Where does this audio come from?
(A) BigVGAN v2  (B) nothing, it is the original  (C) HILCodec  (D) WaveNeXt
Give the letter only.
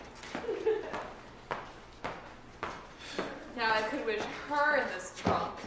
B